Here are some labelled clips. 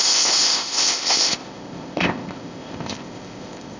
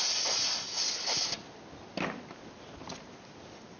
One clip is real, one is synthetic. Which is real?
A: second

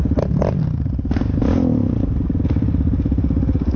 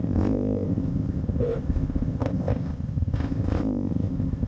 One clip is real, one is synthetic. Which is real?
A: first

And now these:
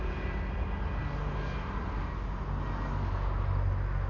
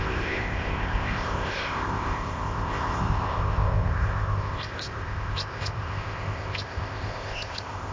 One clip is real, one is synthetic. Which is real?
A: first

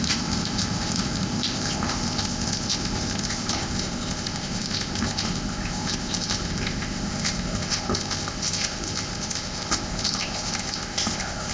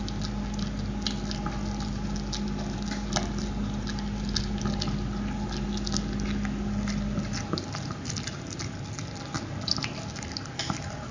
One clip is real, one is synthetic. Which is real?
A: second